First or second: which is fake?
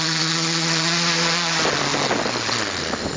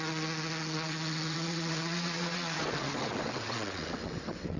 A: second